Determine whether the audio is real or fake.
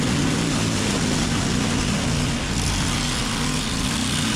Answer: real